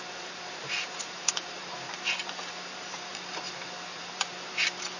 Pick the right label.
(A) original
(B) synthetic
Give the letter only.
B